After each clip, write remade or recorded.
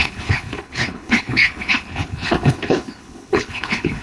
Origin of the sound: remade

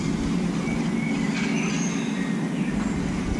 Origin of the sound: recorded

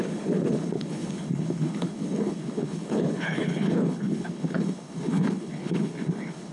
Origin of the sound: remade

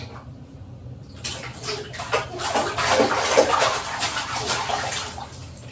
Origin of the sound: recorded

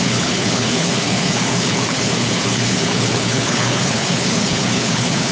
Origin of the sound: remade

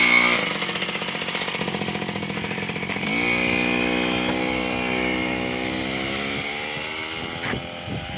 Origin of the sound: recorded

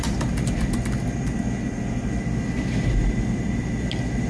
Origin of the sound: recorded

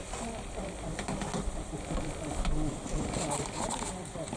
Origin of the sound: recorded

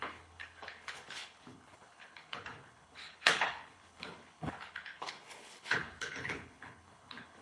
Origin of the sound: remade